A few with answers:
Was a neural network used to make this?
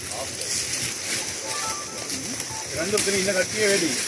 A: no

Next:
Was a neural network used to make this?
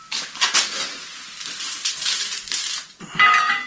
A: no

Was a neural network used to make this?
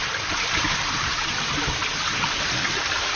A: no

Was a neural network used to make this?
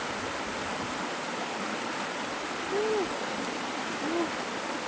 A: no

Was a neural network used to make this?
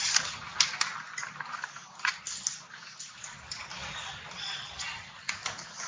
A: no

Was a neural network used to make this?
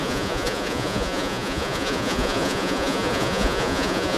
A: yes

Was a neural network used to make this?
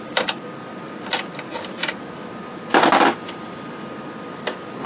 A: no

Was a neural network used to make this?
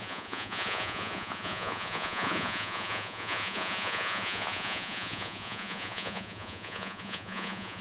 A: yes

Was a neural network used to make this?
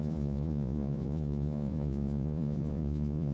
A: yes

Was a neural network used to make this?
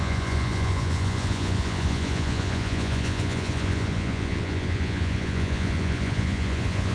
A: yes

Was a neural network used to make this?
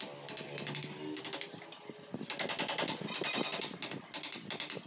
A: no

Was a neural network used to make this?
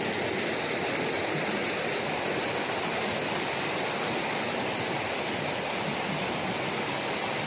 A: no